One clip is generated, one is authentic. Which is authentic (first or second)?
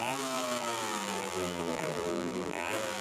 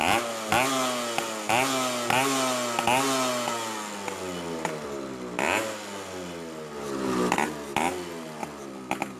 second